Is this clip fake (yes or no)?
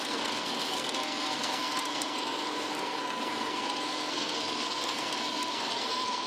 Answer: yes